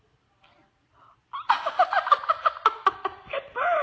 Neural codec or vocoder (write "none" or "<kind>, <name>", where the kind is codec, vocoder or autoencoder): none